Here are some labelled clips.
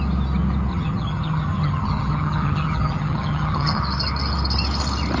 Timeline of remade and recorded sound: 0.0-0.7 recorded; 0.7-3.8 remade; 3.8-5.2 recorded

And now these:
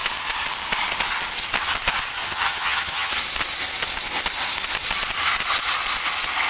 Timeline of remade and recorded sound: 0.0-2.2 recorded; 2.2-3.1 remade; 3.1-6.5 recorded

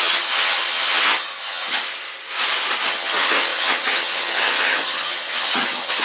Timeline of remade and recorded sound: 0.0-1.8 remade; 1.8-2.9 recorded; 2.9-6.0 remade

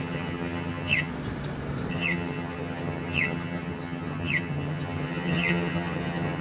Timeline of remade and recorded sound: 0.0-1.1 remade; 1.1-1.9 recorded; 1.9-6.4 remade